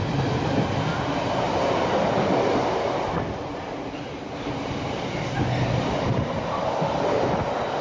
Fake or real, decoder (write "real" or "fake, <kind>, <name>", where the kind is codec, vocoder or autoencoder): real